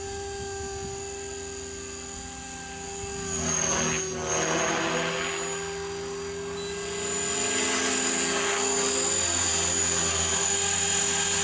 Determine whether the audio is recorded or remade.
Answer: recorded